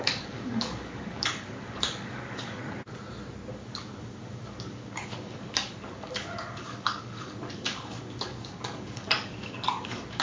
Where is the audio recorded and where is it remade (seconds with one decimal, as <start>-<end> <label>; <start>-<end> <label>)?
0.0-2.6 remade; 2.6-3.5 recorded; 3.5-10.2 remade